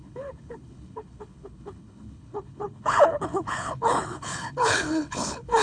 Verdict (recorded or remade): remade